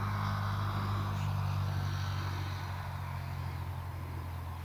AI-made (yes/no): no